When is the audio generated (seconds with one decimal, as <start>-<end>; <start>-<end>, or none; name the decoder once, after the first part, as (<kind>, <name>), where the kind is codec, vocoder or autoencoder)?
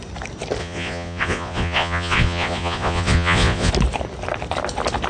0.6-3.7 (vocoder, Vocos)